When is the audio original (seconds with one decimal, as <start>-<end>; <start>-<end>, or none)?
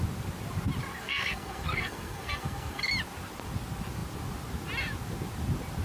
0.0-0.9; 2.9-5.8